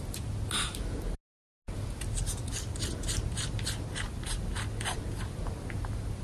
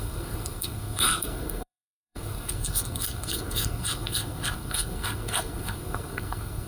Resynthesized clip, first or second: second